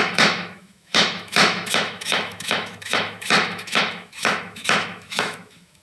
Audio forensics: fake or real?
fake